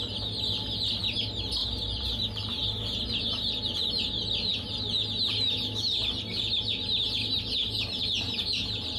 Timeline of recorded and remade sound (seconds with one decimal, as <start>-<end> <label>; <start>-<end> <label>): 0.0-1.6 recorded; 1.6-2.6 remade; 2.6-9.0 recorded